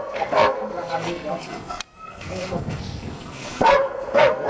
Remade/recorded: remade